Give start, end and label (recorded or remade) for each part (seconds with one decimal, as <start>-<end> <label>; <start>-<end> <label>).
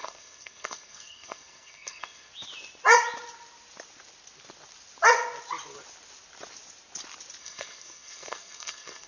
0.0-2.3 remade; 2.3-7.4 recorded; 7.4-9.1 remade